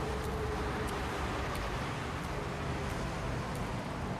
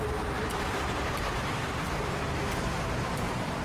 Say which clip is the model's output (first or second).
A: second